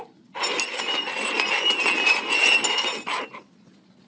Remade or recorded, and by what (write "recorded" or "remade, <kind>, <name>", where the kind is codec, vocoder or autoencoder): recorded